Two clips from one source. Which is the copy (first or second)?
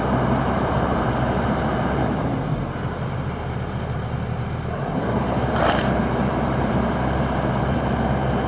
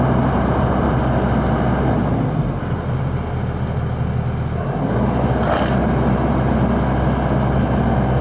first